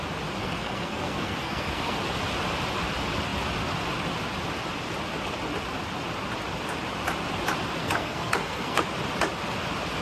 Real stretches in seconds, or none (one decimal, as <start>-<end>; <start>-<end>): 0.0-0.4; 2.0-7.8; 8.8-10.0